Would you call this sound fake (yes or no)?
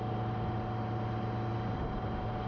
no